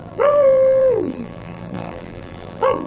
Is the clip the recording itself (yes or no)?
no